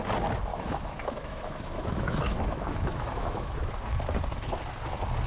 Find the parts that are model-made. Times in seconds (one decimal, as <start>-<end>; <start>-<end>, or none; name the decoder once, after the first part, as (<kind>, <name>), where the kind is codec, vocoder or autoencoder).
0.5-3.7 (autoencoder, DAC-VAE)